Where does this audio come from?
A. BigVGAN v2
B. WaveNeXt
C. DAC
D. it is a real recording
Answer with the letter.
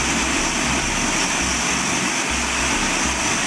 D